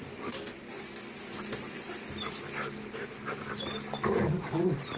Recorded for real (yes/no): yes